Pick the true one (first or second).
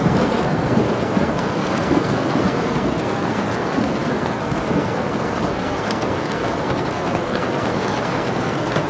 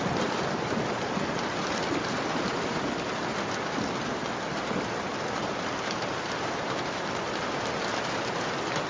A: second